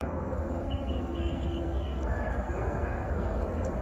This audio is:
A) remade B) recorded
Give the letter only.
A